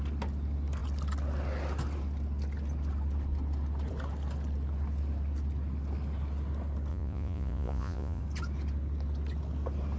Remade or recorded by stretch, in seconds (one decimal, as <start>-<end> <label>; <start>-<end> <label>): 0.0-6.9 recorded; 6.9-8.2 remade; 8.2-10.0 recorded